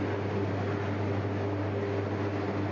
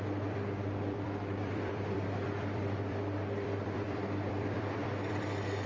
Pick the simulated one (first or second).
second